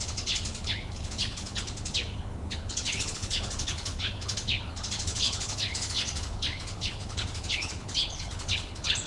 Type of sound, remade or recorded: remade